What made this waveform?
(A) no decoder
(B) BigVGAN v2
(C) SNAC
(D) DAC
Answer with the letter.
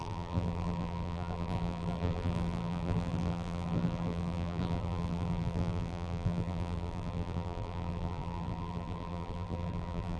B